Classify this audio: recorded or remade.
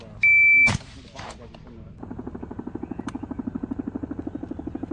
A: recorded